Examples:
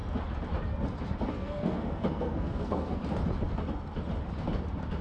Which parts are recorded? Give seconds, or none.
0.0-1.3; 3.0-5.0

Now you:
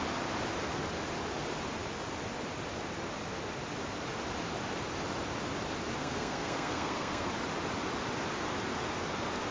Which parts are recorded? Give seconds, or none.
0.0-6.0; 7.3-9.5

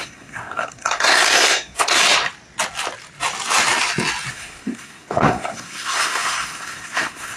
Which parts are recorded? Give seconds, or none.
2.0-4.3

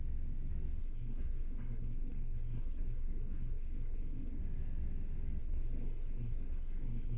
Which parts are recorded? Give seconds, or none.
0.0-0.8; 4.4-5.4

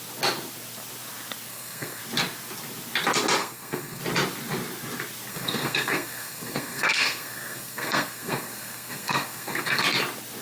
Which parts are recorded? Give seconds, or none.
0.0-1.5; 2.0-3.4; 4.0-5.3; 9.8-10.4